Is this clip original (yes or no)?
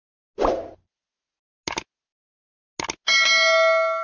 yes